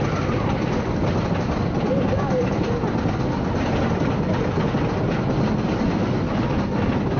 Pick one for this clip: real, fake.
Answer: real